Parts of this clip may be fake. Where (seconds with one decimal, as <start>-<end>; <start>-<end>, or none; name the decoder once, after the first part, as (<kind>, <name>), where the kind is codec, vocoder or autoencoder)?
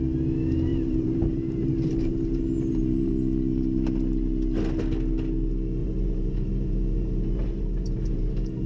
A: 0.7-3.1 (vocoder, BigVGAN v2); 5.8-8.7